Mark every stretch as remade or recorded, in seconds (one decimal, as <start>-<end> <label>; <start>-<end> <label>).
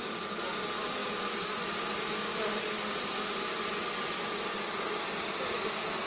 0.0-6.1 recorded